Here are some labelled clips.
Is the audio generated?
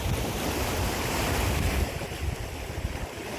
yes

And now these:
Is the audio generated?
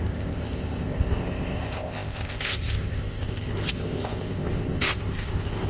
yes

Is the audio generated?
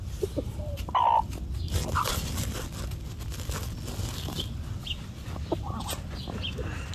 no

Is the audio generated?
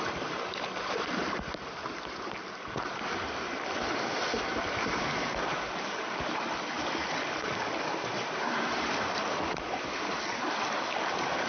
no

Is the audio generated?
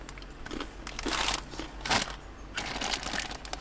no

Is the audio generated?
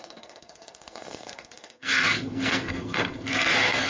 yes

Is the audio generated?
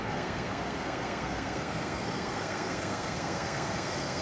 yes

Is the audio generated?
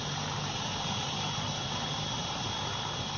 yes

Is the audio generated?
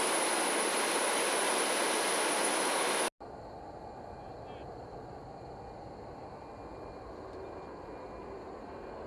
no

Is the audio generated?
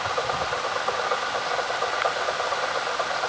no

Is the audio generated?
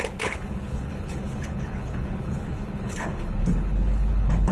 yes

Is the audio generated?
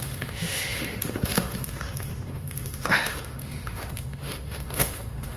yes